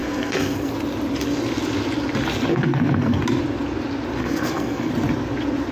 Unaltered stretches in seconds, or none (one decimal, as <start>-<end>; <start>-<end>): 0.7-2.5; 3.2-4.2; 4.9-5.7